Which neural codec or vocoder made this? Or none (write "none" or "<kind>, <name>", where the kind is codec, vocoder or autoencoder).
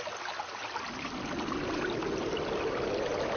none